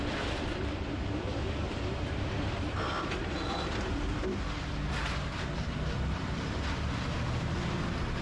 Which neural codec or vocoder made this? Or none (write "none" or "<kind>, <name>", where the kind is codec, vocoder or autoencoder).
vocoder, BigVGAN v2